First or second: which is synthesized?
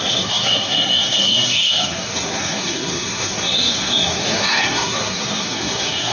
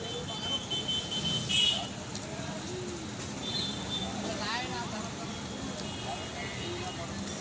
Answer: first